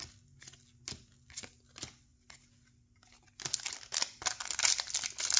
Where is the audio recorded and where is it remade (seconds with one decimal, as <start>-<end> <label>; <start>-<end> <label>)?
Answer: 0.0-5.4 recorded